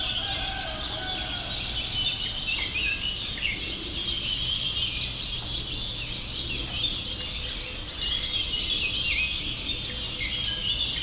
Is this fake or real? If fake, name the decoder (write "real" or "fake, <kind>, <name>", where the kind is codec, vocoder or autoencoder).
real